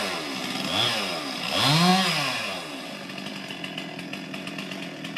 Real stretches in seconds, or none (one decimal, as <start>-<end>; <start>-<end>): 0.0-5.2